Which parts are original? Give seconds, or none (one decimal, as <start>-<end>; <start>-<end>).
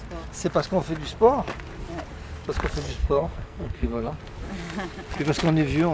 0.0-3.0; 4.2-5.9